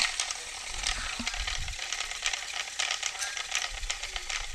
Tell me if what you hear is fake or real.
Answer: real